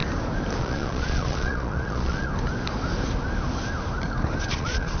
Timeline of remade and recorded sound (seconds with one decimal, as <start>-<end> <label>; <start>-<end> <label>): 0.0-0.6 recorded; 0.6-2.3 remade; 2.3-4.5 recorded; 4.5-5.0 remade